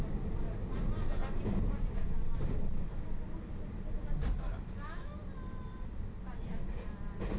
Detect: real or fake real